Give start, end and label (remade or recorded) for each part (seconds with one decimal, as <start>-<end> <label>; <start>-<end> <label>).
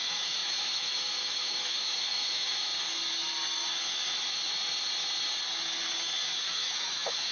0.0-2.7 remade; 2.7-6.5 recorded; 6.5-7.3 remade